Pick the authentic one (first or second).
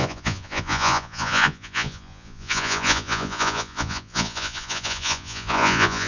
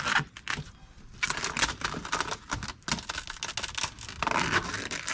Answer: second